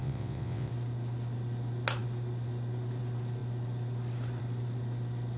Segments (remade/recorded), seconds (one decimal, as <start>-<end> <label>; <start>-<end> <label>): 0.0-0.7 remade; 0.7-5.4 recorded